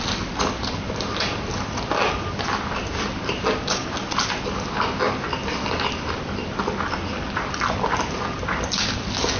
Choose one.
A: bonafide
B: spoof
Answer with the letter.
A